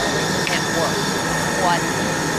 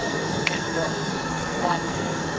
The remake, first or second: second